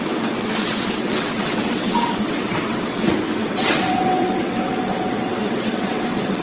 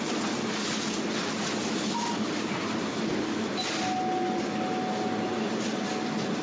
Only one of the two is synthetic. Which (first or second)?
first